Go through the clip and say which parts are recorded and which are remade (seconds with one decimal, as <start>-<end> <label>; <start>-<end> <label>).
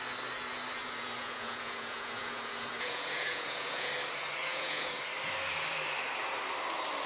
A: 0.0-0.8 recorded; 0.8-3.9 remade; 3.9-4.5 recorded; 4.5-5.0 remade; 5.0-7.1 recorded